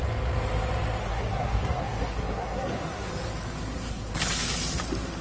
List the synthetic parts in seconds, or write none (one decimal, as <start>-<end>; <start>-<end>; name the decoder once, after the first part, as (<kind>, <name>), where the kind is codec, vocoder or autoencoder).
1.0-3.1 (codec, SNAC); 3.6-4.1